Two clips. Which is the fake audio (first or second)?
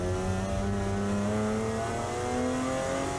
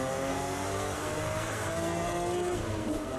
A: second